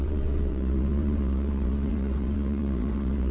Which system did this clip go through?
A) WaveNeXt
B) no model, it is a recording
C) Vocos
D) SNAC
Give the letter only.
A